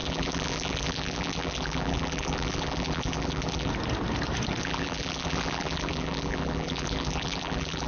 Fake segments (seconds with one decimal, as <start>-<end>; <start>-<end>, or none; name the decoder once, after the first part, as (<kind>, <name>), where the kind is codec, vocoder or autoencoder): 0.0-3.7 (vocoder, BigVGAN v2); 4.6-7.9